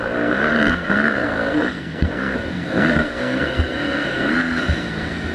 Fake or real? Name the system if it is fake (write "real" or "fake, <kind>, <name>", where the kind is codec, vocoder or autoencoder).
fake, codec, SNAC